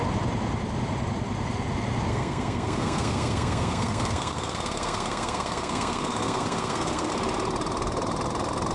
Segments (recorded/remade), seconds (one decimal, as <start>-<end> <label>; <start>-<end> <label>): 0.0-2.1 recorded; 2.1-7.1 remade; 7.1-8.7 recorded